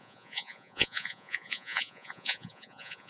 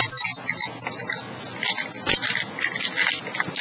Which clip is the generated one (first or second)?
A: first